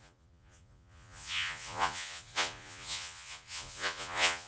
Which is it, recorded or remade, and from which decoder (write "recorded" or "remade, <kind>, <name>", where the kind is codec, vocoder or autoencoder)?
remade, vocoder, Vocos